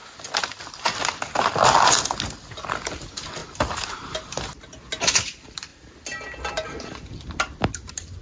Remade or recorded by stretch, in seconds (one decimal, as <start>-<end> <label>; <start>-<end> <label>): 0.0-8.2 recorded